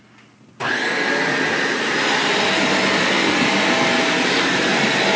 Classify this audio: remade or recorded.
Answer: recorded